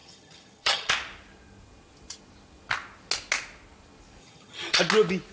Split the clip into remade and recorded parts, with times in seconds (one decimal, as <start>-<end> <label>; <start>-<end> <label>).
0.0-0.9 remade; 0.9-4.2 recorded; 4.2-4.8 remade; 4.8-5.3 recorded